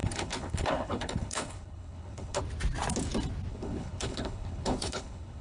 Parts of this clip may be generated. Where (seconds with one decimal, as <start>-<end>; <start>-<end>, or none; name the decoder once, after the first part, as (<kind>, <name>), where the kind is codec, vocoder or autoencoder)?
0.0-2.4 (codec, HILCodec); 3.5-5.4